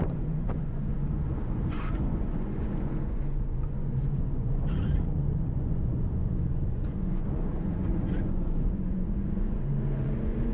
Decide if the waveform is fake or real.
fake